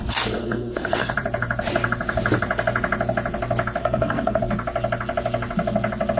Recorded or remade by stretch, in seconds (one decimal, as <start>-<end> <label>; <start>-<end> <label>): 0.0-0.4 recorded; 0.4-1.1 remade; 1.1-3.8 recorded; 3.8-4.4 remade; 4.4-6.2 recorded